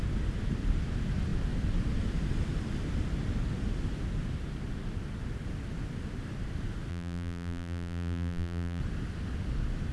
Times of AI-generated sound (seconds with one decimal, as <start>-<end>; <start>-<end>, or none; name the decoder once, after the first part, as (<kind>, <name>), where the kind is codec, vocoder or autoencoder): 6.9-8.8 (vocoder, BigVGAN v2)

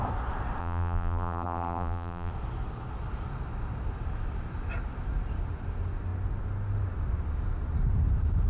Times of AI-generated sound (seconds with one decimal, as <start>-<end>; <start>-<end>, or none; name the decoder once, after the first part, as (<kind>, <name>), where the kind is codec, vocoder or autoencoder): 0.6-2.3 (vocoder, BigVGAN v2)

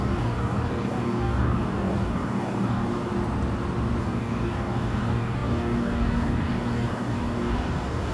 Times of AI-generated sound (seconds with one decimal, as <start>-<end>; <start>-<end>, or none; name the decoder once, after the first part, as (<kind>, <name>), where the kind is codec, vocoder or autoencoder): 0.0-3.1 (codec, DAC); 4.0-8.1

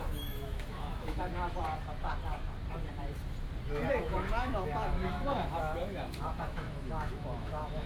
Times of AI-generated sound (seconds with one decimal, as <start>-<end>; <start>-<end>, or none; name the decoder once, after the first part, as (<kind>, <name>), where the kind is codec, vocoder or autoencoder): 0.0-1.3 (autoencoder, DAC-VAE); 3.9-7.9

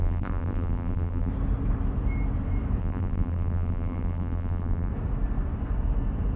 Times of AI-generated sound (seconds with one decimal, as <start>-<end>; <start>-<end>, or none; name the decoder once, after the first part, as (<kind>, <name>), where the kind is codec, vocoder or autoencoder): 0.0-1.3 (vocoder, BigVGAN v2); 2.8-4.9

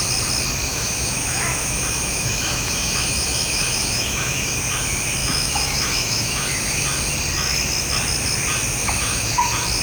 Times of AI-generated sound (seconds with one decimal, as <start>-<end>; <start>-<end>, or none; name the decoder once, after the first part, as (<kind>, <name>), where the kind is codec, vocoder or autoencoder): 0.7-4.6 (autoencoder, DAC-VAE); 5.2-6.8; 8.8-9.4

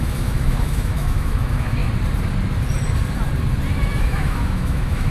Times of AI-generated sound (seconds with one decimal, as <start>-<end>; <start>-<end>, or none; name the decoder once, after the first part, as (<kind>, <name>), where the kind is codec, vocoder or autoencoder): 0.0-1.8 (autoencoder, DAC-VAE); 4.0-5.1